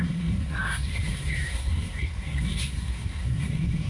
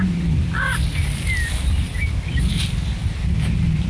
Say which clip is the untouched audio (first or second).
second